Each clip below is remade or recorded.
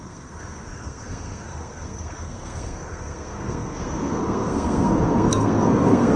remade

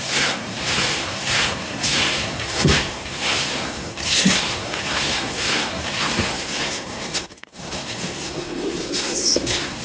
remade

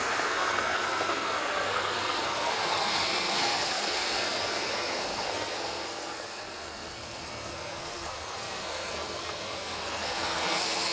remade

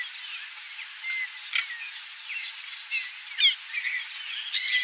recorded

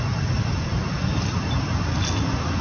recorded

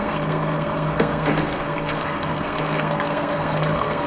remade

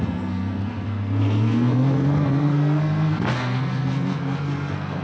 remade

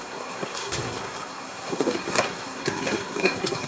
remade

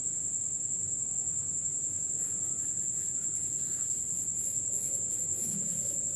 recorded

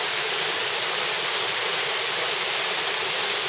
recorded